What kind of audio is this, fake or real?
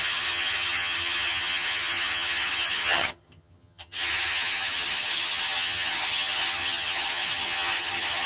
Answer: fake